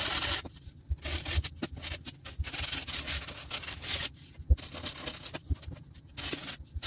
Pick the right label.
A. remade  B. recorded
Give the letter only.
B